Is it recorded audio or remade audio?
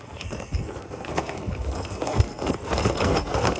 remade